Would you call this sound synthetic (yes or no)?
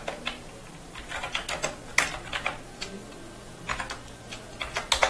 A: no